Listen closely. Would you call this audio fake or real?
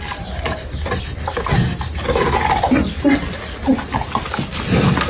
real